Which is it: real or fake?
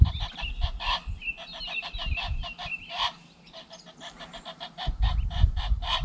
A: real